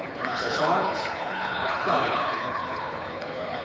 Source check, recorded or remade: remade